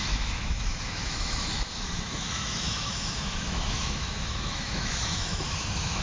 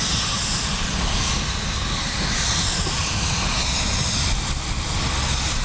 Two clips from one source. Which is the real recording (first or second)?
second